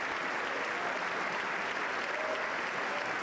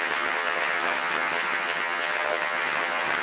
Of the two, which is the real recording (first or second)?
first